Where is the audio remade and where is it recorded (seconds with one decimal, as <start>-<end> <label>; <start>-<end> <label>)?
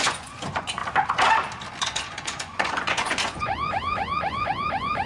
0.0-0.8 remade; 0.8-1.8 recorded; 1.8-5.1 remade